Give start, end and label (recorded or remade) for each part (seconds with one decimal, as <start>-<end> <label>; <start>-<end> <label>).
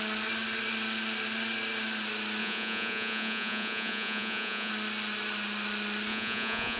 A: 0.0-2.4 recorded; 2.4-4.7 remade; 4.7-6.1 recorded; 6.1-6.8 remade